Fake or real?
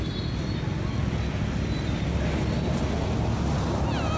real